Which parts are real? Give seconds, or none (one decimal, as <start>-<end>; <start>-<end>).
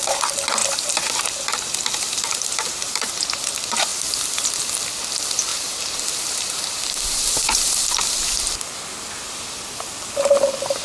0.0-0.6; 3.1-5.5; 8.3-10.8